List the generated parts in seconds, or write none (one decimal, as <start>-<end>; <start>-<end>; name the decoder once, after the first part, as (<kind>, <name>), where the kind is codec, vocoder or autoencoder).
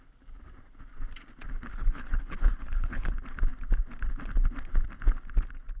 1.7-3.1 (codec, HILCodec)